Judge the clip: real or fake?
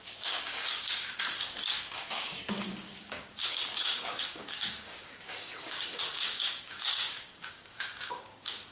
fake